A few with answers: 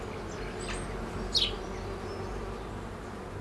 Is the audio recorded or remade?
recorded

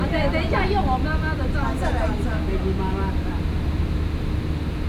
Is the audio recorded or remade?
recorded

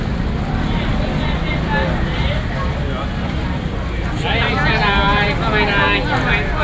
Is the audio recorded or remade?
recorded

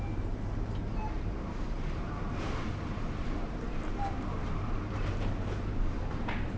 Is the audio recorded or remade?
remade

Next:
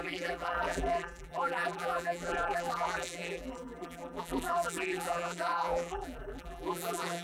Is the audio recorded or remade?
remade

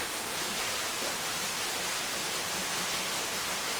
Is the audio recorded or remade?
recorded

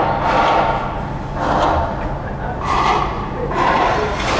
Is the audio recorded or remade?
recorded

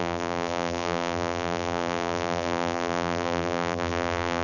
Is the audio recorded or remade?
remade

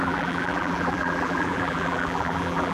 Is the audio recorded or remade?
remade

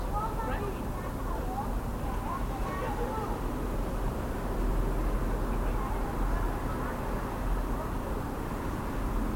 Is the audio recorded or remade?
recorded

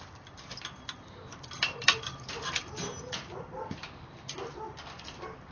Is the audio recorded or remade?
remade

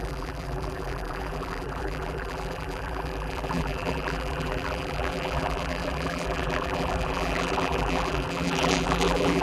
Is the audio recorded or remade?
remade